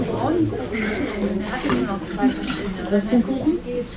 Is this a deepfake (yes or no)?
no